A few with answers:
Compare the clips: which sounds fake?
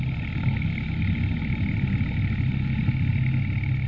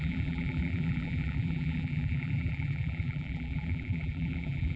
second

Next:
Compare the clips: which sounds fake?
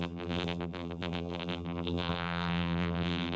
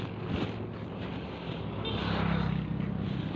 first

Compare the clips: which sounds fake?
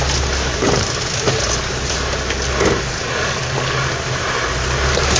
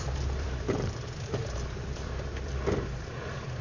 second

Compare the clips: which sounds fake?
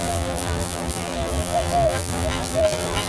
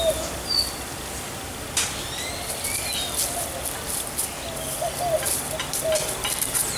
first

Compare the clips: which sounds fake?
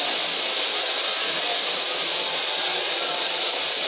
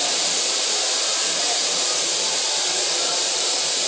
second